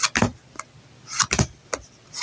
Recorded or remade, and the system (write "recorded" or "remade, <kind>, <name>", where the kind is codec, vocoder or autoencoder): recorded